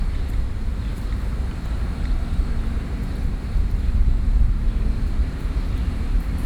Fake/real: fake